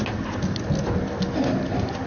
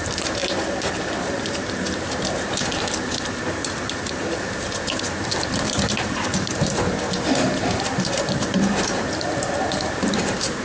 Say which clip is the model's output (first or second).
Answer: second